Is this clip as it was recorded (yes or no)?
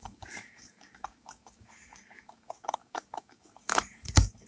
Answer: no